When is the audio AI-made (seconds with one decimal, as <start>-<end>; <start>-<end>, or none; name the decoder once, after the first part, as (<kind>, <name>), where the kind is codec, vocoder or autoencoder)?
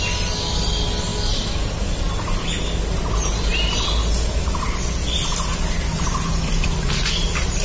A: none